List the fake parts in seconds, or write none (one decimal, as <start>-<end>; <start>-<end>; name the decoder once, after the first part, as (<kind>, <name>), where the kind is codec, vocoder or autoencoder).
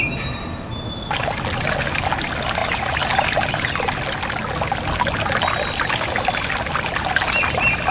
none